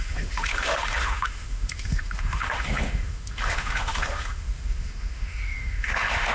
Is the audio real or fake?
fake